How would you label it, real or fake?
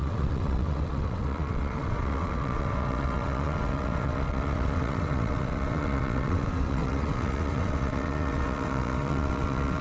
fake